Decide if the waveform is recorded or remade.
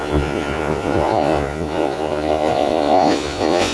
remade